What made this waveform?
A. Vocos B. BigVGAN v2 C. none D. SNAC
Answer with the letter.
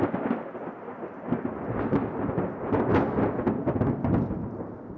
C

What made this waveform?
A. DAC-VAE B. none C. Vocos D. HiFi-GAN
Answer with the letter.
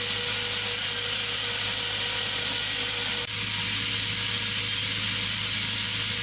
B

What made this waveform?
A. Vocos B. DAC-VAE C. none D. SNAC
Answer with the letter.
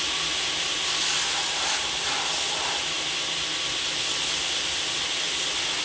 C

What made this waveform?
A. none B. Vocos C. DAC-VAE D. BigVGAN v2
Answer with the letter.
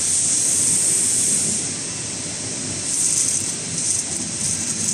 A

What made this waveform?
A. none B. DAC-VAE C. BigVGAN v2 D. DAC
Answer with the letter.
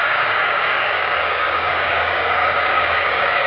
D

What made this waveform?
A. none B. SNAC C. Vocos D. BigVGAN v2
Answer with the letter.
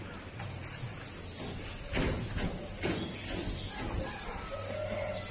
A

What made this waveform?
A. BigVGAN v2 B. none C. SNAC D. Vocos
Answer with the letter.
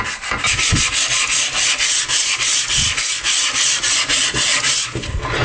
B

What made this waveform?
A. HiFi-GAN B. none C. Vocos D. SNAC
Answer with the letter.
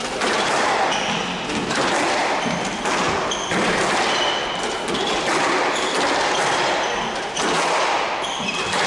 B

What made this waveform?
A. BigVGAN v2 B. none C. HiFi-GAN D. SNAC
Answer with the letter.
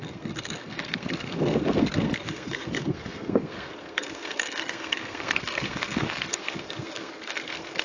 D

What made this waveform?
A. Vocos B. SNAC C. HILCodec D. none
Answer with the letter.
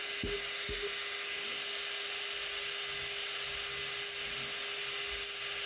D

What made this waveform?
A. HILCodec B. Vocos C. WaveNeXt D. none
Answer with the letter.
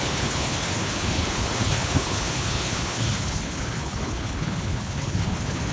A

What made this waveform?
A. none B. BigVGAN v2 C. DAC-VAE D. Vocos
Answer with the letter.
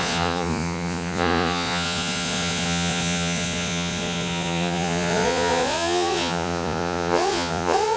D